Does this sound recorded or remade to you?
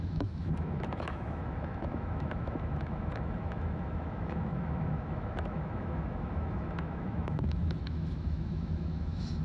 remade